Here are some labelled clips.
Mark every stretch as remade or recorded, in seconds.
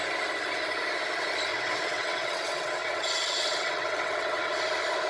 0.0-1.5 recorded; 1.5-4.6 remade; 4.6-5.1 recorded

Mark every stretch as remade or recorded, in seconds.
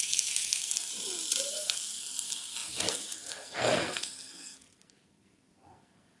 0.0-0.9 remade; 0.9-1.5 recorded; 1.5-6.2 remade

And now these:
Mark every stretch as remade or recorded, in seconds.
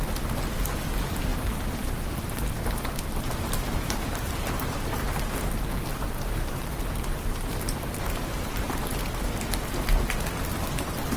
0.0-1.3 recorded; 1.3-4.8 remade; 4.8-5.9 recorded; 5.9-8.3 remade; 8.3-11.2 recorded